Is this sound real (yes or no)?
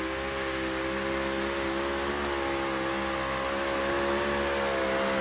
yes